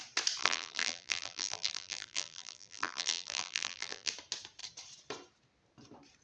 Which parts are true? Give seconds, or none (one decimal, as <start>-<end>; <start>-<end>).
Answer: 0.0-0.4; 4.1-6.2